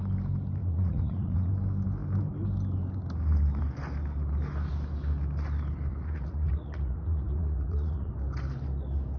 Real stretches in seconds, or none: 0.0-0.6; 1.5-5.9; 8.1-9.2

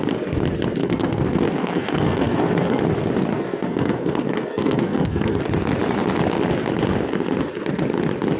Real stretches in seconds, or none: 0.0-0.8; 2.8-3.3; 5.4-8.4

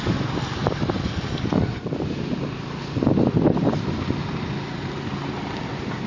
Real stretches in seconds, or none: 0.0-6.1

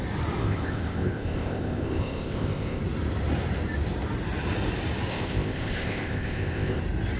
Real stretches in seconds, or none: 0.0-0.4; 2.8-5.1; 6.8-7.2